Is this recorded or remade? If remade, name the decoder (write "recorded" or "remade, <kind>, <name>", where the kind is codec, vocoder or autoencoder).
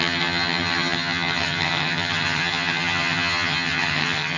remade, vocoder, HiFi-GAN